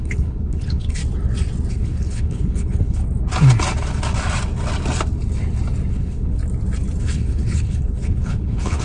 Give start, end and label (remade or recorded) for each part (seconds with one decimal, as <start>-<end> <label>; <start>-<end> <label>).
0.0-1.0 remade; 1.0-1.7 recorded; 1.7-3.0 remade; 3.0-5.9 recorded; 5.9-6.4 remade; 6.4-7.0 recorded; 7.0-8.8 remade